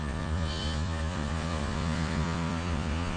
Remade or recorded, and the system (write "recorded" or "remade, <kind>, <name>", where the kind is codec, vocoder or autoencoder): remade, vocoder, Vocos